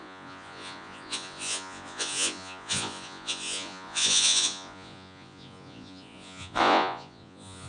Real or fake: fake